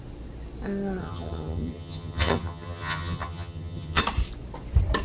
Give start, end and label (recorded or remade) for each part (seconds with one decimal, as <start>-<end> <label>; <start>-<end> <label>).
0.0-1.0 recorded; 1.0-4.0 remade; 4.0-5.0 recorded

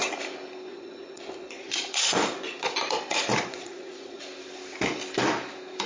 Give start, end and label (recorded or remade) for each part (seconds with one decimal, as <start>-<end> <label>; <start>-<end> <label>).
0.0-0.7 recorded; 0.7-4.2 remade; 4.2-5.9 recorded

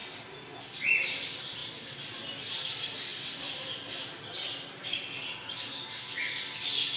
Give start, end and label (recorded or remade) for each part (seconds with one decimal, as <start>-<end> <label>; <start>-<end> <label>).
0.0-7.0 recorded

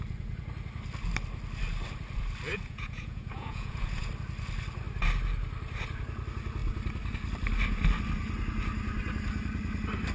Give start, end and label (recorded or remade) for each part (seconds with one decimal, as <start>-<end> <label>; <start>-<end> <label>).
0.0-2.5 recorded; 2.5-4.1 remade; 4.1-10.1 recorded

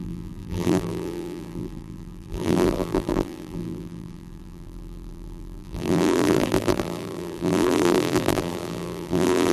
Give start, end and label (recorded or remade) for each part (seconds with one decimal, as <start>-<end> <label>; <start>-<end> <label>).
0.0-9.5 remade

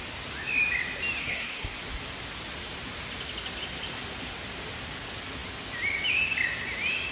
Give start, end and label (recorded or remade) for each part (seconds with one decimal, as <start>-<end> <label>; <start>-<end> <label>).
0.0-1.2 recorded; 1.2-1.8 remade; 1.8-7.1 recorded

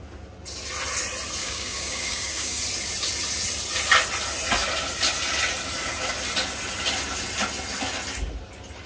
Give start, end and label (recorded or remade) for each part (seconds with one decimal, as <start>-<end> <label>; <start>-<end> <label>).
0.0-1.4 recorded; 1.4-2.6 remade; 2.6-8.9 recorded

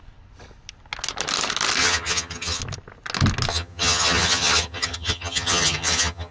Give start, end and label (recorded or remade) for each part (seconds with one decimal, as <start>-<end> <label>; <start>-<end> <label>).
0.0-1.8 recorded; 1.8-2.6 remade; 2.6-3.5 recorded; 3.5-6.3 remade